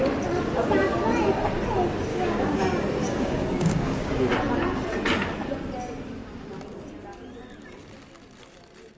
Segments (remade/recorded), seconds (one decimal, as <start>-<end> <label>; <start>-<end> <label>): 0.0-2.1 recorded; 2.1-2.6 remade; 2.6-3.0 recorded; 3.0-4.1 remade; 4.1-9.0 recorded